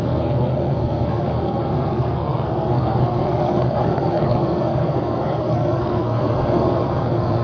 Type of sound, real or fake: fake